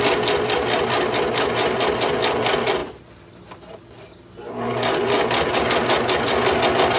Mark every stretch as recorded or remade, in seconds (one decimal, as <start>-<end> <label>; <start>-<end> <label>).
0.0-7.0 recorded